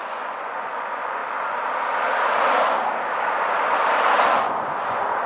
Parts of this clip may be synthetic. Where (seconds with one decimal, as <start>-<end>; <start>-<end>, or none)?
0.0-1.2; 4.4-5.3